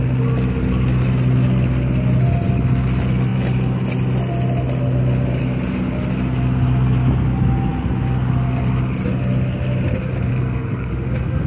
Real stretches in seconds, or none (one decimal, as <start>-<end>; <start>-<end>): 0.0-10.3; 10.9-11.5